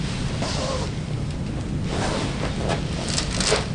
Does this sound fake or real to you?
real